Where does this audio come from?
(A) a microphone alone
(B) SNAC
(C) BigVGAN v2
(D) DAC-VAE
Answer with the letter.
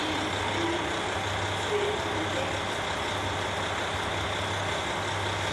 A